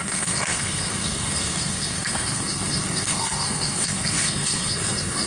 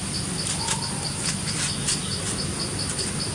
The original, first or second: second